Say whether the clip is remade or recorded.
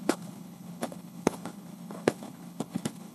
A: remade